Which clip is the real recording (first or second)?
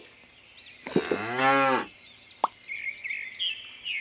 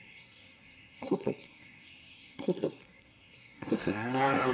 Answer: first